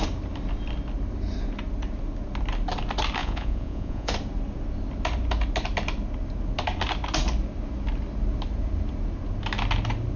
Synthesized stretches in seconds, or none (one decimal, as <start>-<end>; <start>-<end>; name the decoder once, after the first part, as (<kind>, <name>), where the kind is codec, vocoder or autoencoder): 3.2-4.1 (vocoder, Vocos)